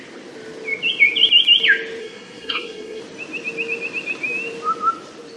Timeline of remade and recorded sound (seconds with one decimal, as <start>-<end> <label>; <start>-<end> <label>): 0.0-2.0 recorded; 2.0-3.0 remade; 3.0-5.4 recorded